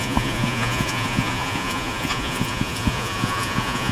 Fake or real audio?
fake